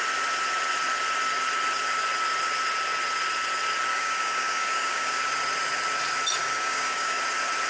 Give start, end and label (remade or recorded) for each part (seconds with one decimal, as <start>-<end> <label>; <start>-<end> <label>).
0.0-3.9 recorded; 3.9-5.2 remade; 5.2-6.4 recorded; 6.4-7.2 remade; 7.2-7.7 recorded